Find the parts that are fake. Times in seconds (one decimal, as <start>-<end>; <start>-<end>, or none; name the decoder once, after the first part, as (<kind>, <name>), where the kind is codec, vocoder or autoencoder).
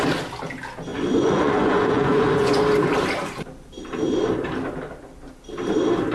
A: 0.9-2.6 (vocoder, Vocos)